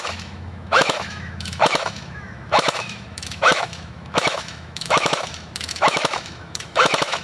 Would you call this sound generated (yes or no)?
yes